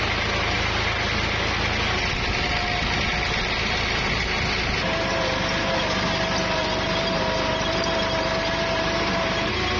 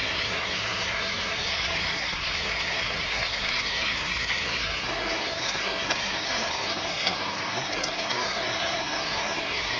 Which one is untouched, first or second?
first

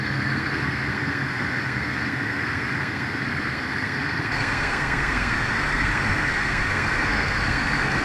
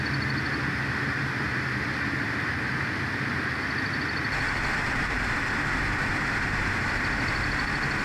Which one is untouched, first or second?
second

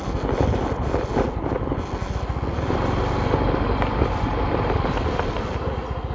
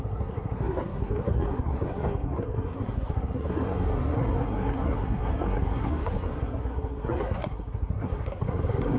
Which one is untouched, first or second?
first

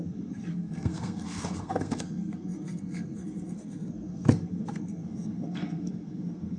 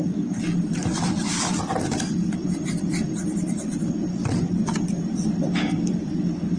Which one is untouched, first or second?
second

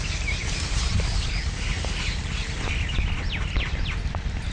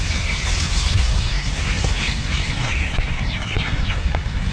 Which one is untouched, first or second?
first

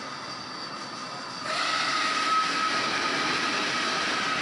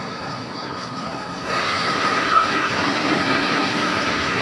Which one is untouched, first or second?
first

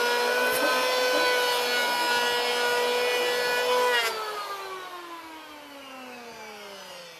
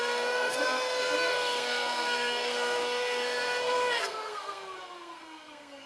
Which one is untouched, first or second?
first